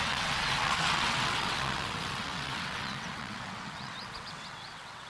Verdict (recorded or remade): remade